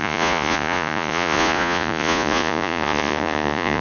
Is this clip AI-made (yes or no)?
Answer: yes